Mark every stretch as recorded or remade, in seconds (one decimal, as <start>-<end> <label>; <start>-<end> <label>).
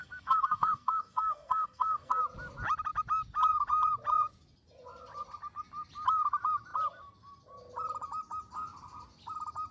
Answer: 0.0-2.2 remade; 2.2-9.7 recorded